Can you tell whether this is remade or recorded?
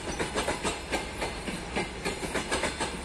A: recorded